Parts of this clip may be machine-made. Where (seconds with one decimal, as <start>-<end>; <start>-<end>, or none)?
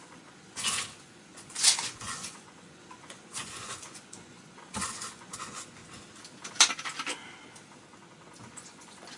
0.0-5.8; 8.5-9.2